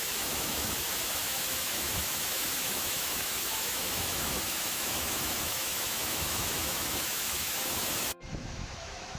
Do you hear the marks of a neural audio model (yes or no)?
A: yes